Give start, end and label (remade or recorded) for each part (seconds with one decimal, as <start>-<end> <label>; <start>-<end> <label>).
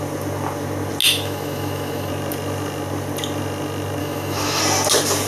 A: 0.0-1.0 recorded; 1.0-2.1 remade; 2.1-4.0 recorded; 4.0-4.6 remade; 4.6-5.3 recorded